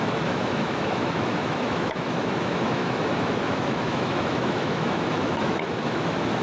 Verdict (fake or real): fake